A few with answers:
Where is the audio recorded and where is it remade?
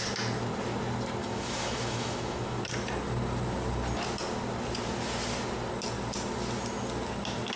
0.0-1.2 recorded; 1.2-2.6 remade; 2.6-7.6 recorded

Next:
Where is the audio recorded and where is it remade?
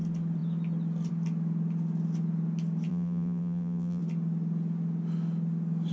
0.0-2.9 recorded; 2.9-4.0 remade; 4.0-5.9 recorded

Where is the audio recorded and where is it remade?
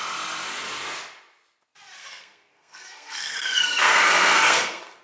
0.0-2.0 recorded; 2.0-5.0 remade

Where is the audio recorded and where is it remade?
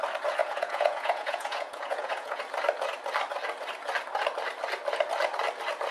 0.0-0.4 recorded; 0.4-2.4 remade; 2.4-5.9 recorded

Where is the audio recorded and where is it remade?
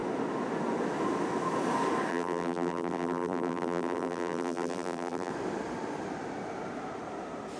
0.0-2.1 recorded; 2.1-5.3 remade; 5.3-7.6 recorded